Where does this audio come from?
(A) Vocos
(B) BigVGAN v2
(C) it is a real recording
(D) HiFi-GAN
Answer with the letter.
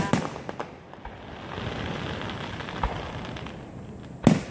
C